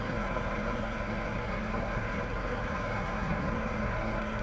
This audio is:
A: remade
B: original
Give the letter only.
A